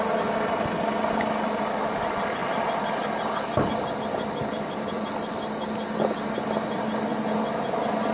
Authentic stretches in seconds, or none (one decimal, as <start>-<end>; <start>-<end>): 0.0-2.4; 4.0-8.1